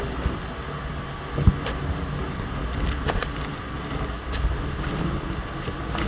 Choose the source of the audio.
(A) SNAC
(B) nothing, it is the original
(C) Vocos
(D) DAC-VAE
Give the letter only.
B